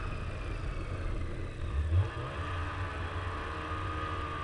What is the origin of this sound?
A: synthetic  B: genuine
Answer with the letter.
B